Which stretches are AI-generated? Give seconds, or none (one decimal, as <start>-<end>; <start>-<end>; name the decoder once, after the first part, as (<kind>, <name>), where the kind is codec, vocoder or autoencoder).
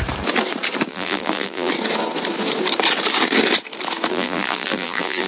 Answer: 0.9-1.7 (vocoder, BigVGAN v2); 4.1-5.3